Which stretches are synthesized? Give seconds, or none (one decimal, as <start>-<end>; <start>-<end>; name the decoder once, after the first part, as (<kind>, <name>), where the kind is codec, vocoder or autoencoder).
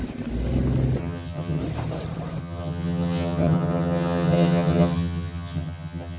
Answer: 1.0-1.6 (vocoder, HiFi-GAN); 2.4-6.2